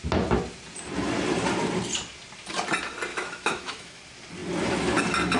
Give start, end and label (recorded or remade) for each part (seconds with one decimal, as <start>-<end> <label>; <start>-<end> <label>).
0.0-3.1 recorded; 3.1-4.0 remade; 4.0-5.4 recorded